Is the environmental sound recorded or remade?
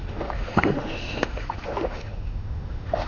remade